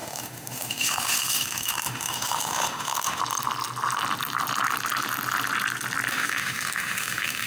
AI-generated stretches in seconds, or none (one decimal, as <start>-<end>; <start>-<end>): 0.0-3.2; 6.1-7.5

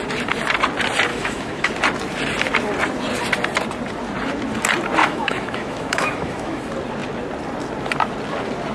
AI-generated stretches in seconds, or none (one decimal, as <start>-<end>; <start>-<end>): 1.1-1.7; 5.0-6.6

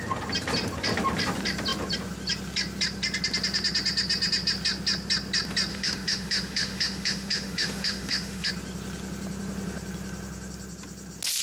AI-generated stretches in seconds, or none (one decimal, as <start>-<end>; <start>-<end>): 5.7-8.5

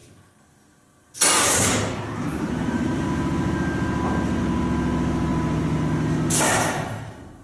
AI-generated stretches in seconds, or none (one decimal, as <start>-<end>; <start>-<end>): none

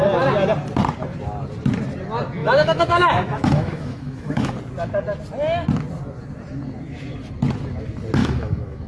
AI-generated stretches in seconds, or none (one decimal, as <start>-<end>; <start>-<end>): 2.4-4.5; 8.2-8.9

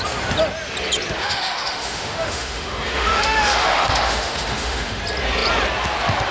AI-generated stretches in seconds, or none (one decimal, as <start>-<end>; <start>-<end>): 1.2-5.0

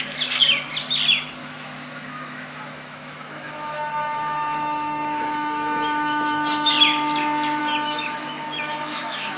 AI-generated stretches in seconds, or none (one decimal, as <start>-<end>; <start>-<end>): 1.4-6.7; 7.6-9.4